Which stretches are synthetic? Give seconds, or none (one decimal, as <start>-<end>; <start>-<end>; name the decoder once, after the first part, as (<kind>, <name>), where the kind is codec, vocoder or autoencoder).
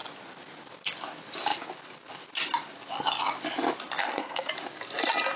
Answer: 4.0-4.5 (codec, SNAC)